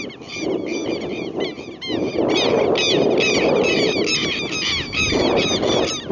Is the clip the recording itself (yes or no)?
yes